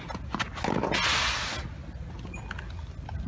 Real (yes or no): yes